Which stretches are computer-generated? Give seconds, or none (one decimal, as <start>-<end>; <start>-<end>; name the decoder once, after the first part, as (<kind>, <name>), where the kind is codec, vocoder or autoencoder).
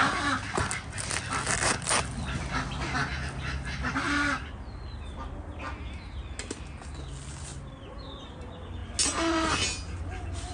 none